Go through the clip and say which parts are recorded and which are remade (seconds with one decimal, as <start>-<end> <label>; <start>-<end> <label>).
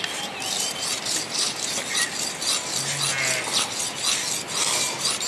0.0-5.3 recorded